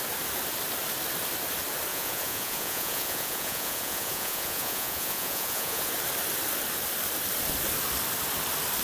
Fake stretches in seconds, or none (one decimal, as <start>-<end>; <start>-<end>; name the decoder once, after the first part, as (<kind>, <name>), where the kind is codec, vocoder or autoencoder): 1.9-5.9 (vocoder, Vocos)